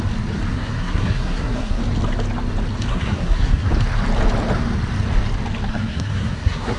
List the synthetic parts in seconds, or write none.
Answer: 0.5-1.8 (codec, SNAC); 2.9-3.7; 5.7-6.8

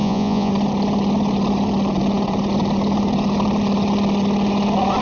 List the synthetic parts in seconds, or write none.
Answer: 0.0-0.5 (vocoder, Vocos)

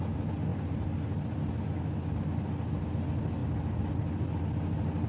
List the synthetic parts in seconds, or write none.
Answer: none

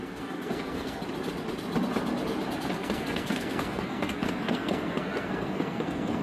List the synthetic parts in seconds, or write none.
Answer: 0.0-1.0 (codec, SNAC); 2.7-6.2